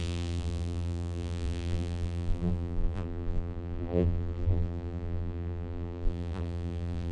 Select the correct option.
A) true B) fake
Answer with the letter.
B